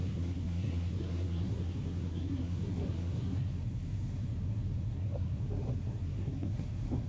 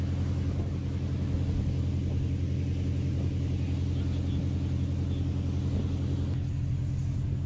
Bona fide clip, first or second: second